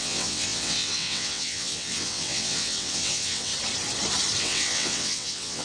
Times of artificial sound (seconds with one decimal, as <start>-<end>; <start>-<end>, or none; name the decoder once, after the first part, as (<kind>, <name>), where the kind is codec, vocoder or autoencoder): 0.0-3.5 (vocoder, WaveNeXt); 4.4-5.6